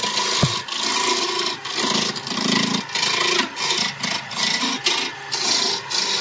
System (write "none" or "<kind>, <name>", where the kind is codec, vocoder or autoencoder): none